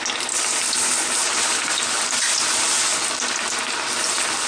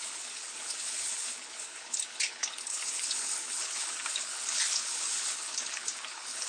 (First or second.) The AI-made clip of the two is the second